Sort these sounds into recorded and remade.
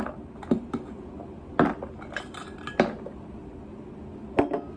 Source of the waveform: recorded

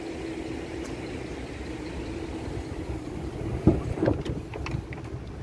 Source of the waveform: recorded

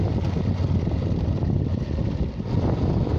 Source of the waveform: recorded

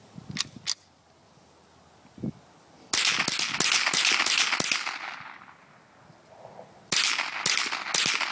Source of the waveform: recorded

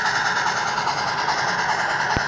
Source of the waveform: recorded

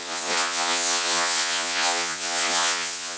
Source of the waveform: remade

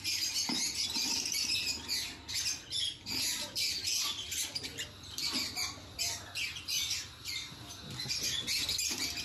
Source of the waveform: recorded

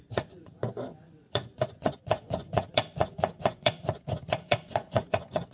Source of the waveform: remade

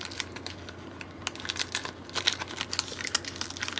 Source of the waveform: recorded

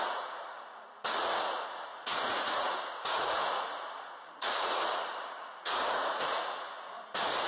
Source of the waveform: remade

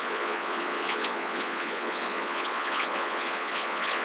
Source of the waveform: remade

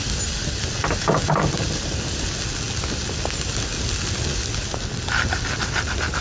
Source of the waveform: recorded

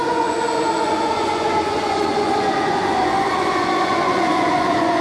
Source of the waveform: remade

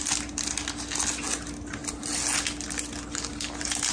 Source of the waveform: recorded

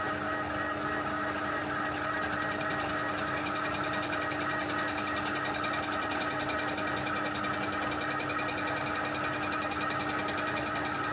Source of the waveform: recorded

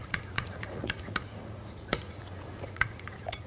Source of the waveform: remade